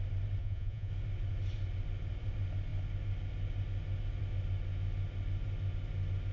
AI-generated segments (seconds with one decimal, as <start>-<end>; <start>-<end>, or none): 0.4-0.9